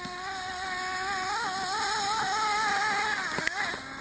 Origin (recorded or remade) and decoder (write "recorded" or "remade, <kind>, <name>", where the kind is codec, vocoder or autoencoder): recorded